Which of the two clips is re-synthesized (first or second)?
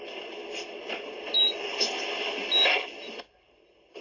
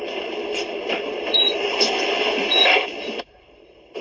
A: second